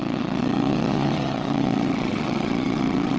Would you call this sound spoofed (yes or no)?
yes